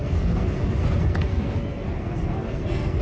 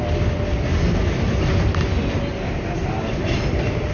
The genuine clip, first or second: second